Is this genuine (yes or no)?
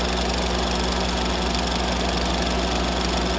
yes